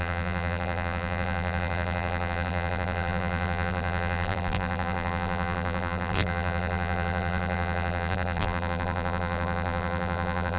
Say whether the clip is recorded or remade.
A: remade